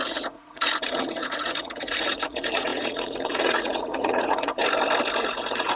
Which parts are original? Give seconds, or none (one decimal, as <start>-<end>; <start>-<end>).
4.6-5.2

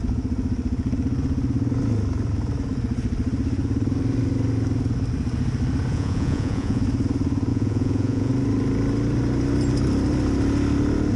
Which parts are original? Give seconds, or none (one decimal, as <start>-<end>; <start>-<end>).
0.0-5.9; 6.8-7.5; 8.3-11.2